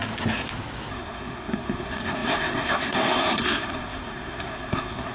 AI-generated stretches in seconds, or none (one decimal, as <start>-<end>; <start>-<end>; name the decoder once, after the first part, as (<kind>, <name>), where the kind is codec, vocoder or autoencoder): 0.9-5.1 (codec, SNAC)